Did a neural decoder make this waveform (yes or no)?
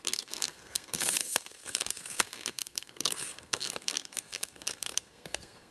yes